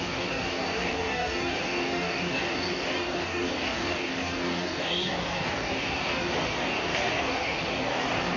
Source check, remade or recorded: remade